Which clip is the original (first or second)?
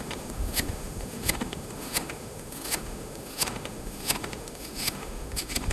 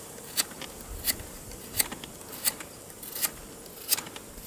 second